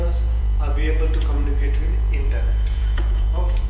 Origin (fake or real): fake